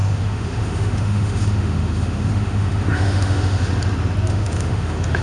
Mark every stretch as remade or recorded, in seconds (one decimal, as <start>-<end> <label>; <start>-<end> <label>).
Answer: 0.0-3.7 remade; 3.7-4.3 recorded; 4.3-5.2 remade

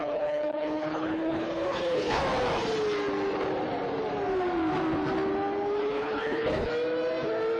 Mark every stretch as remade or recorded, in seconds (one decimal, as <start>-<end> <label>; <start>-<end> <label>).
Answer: 0.0-2.2 remade; 2.2-5.8 recorded; 5.8-6.7 remade; 6.7-7.6 recorded

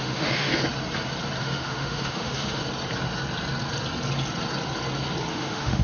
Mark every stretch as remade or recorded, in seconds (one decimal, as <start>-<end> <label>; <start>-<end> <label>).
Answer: 0.0-0.5 remade; 0.5-1.4 recorded; 1.4-2.6 remade; 2.6-5.3 recorded; 5.3-5.8 remade

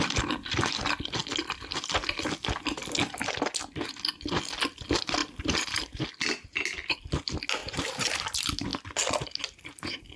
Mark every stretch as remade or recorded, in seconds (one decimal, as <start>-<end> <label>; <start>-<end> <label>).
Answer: 0.0-5.2 recorded; 5.2-6.0 remade; 6.0-7.6 recorded; 7.6-8.2 remade; 8.2-10.2 recorded

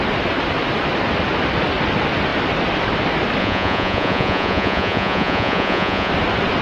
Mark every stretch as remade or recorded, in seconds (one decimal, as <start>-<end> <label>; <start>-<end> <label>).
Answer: 0.0-3.4 recorded; 3.4-6.1 remade; 6.1-6.6 recorded